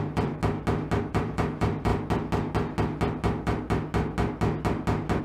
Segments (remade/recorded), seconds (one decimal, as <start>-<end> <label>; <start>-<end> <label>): 0.0-0.4 remade; 0.4-1.0 recorded; 1.0-1.9 remade; 1.9-5.2 recorded